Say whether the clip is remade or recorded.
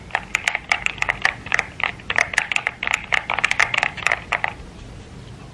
recorded